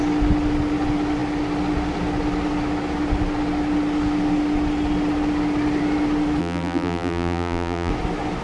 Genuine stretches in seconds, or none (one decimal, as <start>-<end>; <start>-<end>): 0.0-6.4; 7.9-8.4